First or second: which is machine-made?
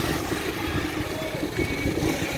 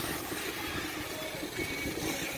first